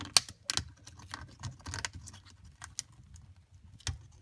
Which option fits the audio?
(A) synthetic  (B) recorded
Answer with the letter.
B